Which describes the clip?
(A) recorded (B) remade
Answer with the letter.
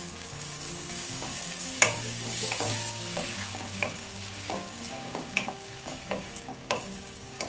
B